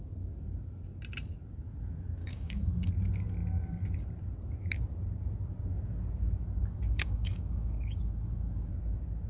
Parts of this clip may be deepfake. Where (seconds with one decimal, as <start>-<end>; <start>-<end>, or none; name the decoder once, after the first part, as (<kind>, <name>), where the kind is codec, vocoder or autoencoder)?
2.2-2.9 (codec, DAC); 6.6-8.7